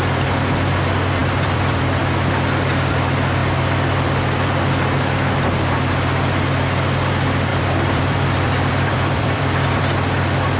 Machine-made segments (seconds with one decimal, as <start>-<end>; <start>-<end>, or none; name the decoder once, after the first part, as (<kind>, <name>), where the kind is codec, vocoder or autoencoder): 1.2-2.0 (vocoder, BigVGAN v2); 7.5-9.8